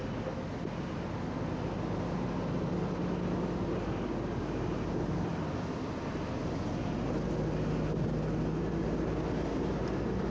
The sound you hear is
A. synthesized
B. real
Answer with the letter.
B